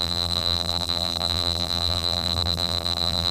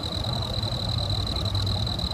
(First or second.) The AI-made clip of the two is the first